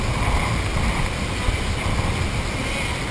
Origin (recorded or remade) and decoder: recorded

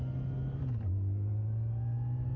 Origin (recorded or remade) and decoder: recorded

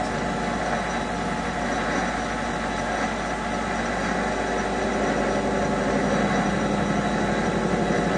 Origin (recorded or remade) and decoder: recorded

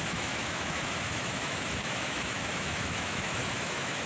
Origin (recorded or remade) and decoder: remade, autoencoder, DAC-VAE